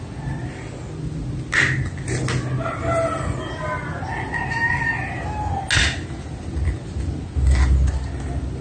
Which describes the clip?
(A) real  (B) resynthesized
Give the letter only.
A